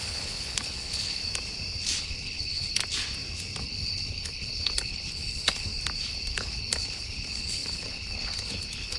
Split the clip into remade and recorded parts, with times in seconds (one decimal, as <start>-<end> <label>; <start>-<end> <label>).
0.0-1.2 remade; 1.2-2.0 recorded; 2.0-2.8 remade; 2.8-3.6 recorded; 3.6-5.7 remade; 5.7-6.3 recorded; 6.3-9.0 remade